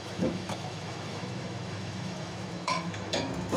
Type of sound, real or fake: fake